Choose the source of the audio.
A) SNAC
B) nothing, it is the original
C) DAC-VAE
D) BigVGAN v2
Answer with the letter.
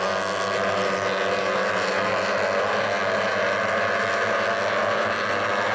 B